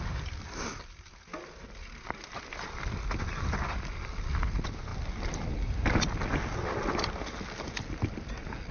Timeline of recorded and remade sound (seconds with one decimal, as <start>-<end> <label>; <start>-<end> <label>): 0.0-8.7 recorded